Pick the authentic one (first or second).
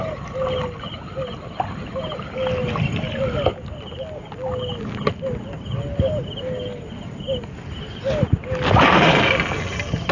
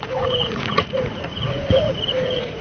first